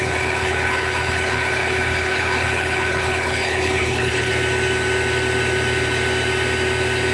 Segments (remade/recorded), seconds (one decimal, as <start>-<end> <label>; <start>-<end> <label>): 0.0-4.3 remade; 4.3-7.1 recorded